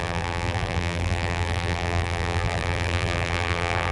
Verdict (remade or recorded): remade